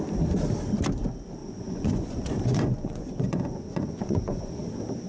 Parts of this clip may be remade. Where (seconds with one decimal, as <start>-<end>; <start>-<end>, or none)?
1.4-4.5